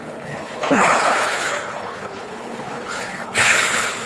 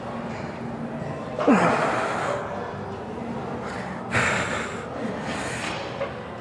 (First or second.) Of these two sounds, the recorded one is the second